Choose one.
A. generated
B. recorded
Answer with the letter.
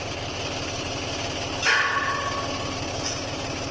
B